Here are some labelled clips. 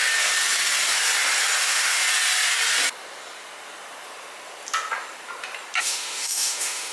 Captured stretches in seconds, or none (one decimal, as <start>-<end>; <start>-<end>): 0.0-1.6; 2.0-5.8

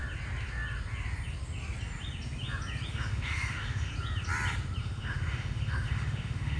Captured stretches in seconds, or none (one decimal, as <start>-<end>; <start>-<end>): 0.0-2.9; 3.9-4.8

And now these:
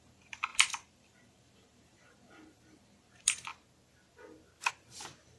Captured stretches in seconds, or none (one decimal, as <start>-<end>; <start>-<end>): 3.5-4.7

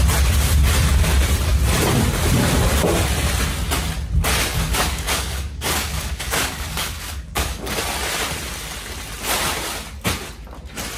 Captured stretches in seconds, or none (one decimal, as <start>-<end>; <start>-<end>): 0.0-4.5; 7.7-11.0